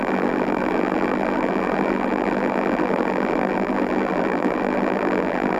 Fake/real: fake